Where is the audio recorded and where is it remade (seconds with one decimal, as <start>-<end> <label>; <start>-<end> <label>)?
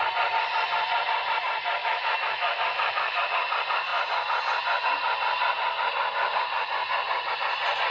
0.0-1.8 recorded; 1.8-3.2 remade; 3.2-7.9 recorded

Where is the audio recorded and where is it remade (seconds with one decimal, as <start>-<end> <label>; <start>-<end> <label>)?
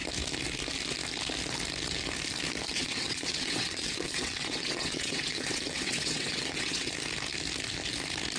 0.0-2.7 recorded; 2.7-6.9 remade; 6.9-8.4 recorded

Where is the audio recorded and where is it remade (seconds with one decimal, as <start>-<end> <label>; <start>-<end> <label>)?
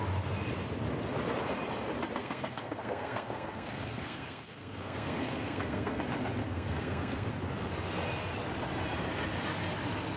0.0-2.2 recorded; 2.2-6.0 remade; 6.0-6.4 recorded; 6.4-7.3 remade; 7.3-10.2 recorded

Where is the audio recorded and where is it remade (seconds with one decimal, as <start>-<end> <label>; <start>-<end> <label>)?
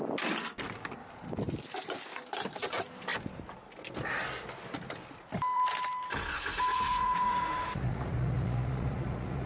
0.0-6.7 recorded; 6.7-9.5 remade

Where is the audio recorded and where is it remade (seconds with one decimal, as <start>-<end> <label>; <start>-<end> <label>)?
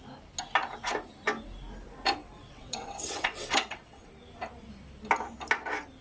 0.0-2.2 recorded; 2.2-4.1 remade; 4.1-6.0 recorded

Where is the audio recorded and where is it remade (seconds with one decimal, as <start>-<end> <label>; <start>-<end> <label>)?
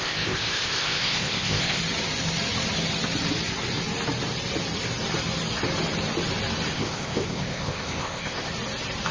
0.0-1.8 remade; 1.8-6.7 recorded; 6.7-8.5 remade; 8.5-9.1 recorded